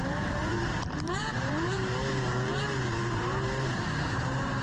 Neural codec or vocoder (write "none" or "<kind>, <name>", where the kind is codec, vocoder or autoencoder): vocoder, BigVGAN v2